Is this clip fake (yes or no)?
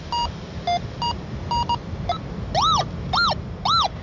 no